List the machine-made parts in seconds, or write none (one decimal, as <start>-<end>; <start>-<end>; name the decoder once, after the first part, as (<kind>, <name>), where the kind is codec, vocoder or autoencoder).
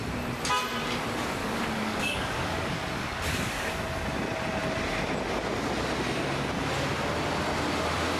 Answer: 1.4-3.7 (codec, DAC)